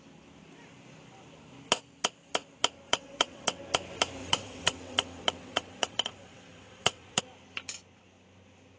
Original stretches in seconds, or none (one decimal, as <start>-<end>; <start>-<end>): 0.0-2.9; 3.6-4.2; 7.2-8.8

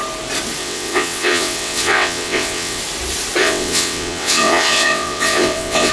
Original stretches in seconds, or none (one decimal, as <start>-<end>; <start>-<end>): 0.0-0.6; 2.8-3.4